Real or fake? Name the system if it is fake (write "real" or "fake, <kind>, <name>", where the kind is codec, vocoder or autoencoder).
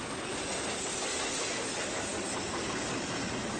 real